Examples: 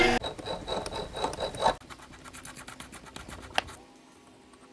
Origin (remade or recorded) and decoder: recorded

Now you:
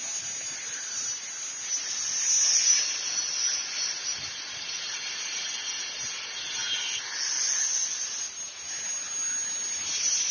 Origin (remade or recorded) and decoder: recorded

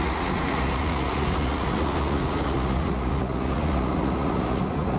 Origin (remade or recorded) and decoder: remade, vocoder, Vocos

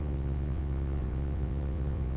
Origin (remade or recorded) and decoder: remade, vocoder, WaveNeXt